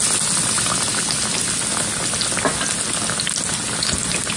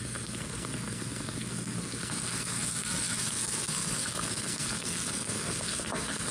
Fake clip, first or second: second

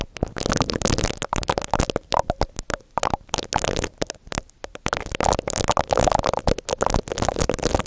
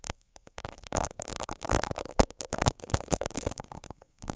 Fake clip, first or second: second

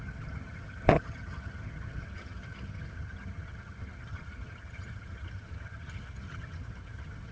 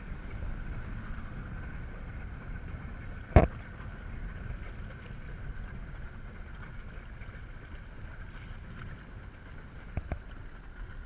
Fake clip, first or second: first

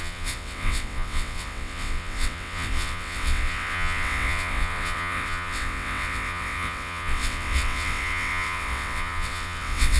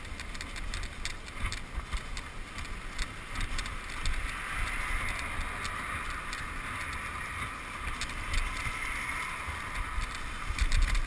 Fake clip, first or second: first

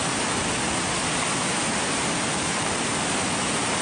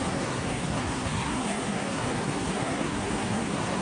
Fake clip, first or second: second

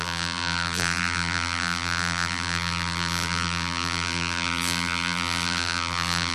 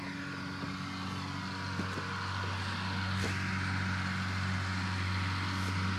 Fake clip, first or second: first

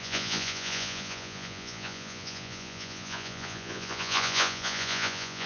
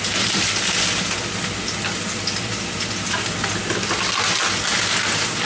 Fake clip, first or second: first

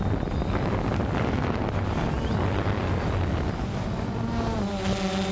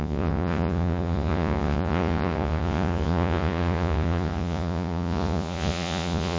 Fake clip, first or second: second